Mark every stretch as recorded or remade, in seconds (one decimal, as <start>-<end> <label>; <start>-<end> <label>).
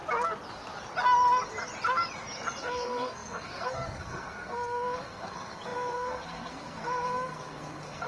0.0-2.6 recorded; 2.6-8.1 remade